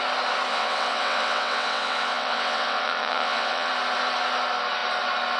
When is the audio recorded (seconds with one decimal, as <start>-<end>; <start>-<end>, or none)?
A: 0.0-0.5; 3.7-5.4